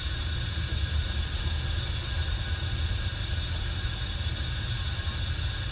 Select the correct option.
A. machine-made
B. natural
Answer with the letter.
B